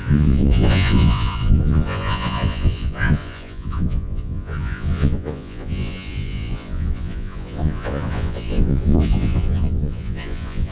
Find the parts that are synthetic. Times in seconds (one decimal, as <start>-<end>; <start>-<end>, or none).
0.0-10.7